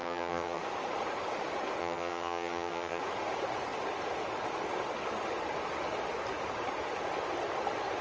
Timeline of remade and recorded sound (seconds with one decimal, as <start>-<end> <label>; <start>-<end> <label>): 0.0-0.6 remade; 0.6-1.8 recorded; 1.8-3.0 remade; 3.0-8.0 recorded